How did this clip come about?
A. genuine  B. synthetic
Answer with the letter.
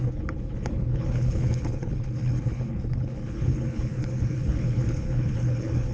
B